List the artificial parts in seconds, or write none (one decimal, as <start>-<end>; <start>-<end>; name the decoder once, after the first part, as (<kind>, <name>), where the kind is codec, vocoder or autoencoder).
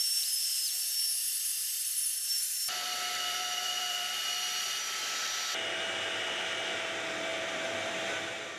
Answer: 0.0-0.6 (vocoder, BigVGAN v2); 1.2-5.0; 7.3-8.6